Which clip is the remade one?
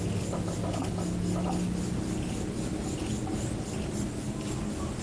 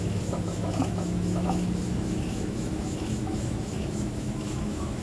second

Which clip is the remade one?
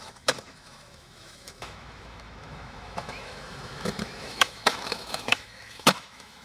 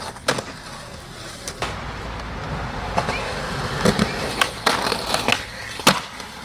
first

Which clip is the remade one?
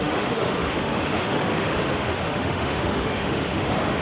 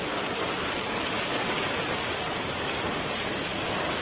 first